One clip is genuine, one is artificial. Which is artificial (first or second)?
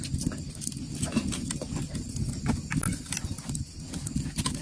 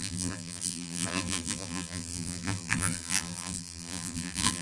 second